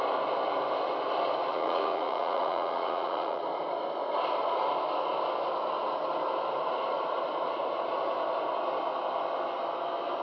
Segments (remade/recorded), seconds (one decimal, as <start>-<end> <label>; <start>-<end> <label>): 0.0-1.5 recorded; 1.5-3.4 remade; 3.4-10.2 recorded